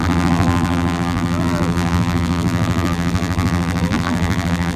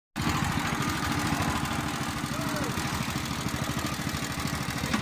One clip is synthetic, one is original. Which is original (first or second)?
second